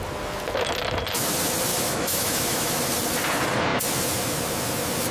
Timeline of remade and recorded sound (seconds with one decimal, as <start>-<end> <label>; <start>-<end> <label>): 0.0-1.7 recorded; 1.7-2.8 remade; 2.8-5.1 recorded